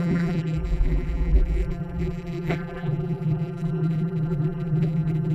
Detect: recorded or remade remade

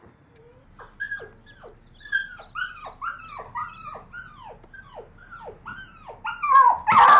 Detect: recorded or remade recorded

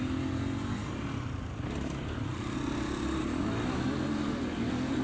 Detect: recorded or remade recorded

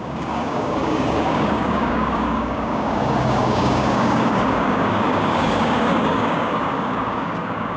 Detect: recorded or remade remade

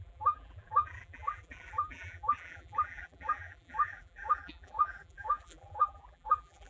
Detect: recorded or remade remade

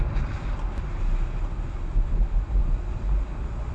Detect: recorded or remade recorded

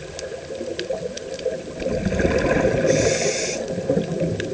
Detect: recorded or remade recorded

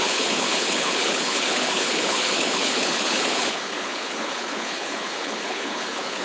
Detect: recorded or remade remade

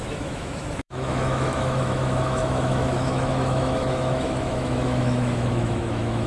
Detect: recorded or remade remade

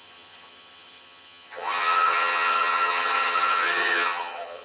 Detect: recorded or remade remade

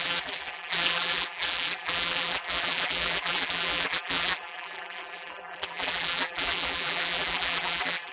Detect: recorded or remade remade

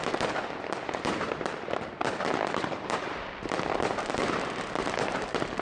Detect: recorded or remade remade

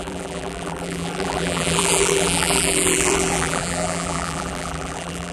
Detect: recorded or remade remade